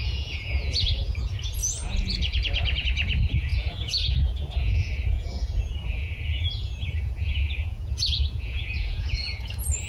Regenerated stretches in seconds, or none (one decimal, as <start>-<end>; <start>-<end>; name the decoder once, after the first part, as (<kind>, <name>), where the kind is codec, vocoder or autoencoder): 0.0-9.9 (vocoder, Vocos)